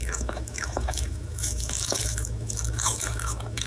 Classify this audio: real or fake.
fake